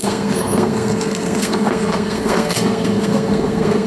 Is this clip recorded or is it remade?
remade